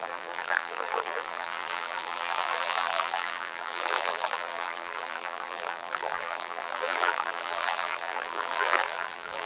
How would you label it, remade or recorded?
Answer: remade